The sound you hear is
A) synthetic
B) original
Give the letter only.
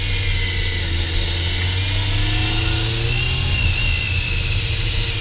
B